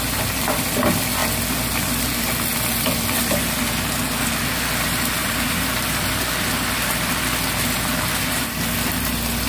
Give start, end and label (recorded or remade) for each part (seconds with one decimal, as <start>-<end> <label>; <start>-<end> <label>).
0.0-5.2 recorded; 5.2-6.1 remade; 6.1-9.5 recorded